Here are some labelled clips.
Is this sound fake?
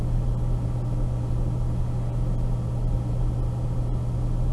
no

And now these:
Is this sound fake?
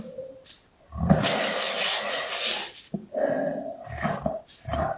no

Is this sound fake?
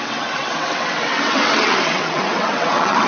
yes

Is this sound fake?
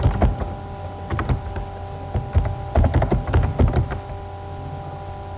no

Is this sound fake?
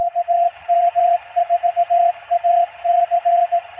yes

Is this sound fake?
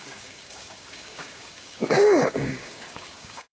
yes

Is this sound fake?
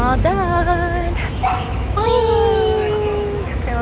yes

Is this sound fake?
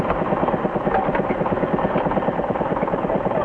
no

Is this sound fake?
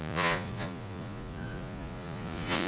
yes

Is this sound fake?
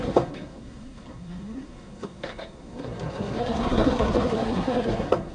yes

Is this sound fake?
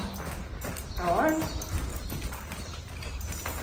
no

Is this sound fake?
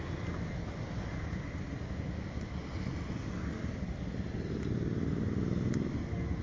no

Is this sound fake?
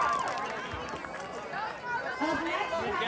no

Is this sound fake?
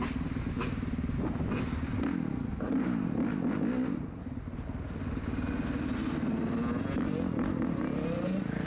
no